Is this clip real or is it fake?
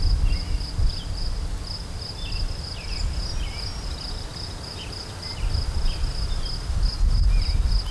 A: real